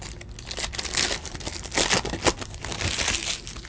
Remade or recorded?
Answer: recorded